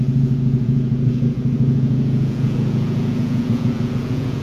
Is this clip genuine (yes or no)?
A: no